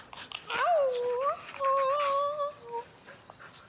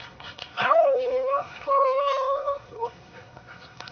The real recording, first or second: first